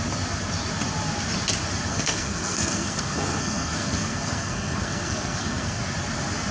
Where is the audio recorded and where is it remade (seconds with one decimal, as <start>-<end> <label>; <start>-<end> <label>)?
0.0-1.9 recorded; 1.9-5.8 remade; 5.8-6.5 recorded